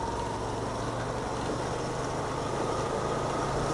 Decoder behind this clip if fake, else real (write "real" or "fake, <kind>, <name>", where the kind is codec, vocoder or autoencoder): real